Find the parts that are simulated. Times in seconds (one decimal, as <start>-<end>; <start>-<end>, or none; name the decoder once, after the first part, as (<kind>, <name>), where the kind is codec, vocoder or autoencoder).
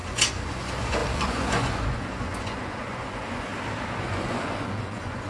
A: 0.0-3.5 (vocoder, Vocos); 4.0-5.3